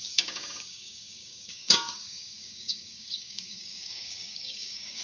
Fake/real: fake